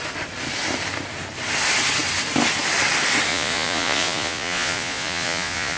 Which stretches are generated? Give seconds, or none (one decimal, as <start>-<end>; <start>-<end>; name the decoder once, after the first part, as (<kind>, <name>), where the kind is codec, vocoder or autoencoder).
3.3-5.8 (vocoder, Vocos)